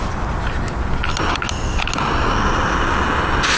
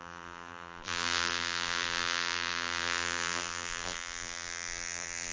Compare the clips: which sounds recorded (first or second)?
first